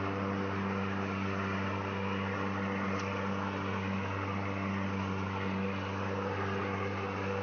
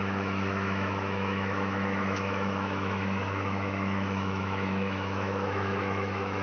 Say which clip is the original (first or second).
first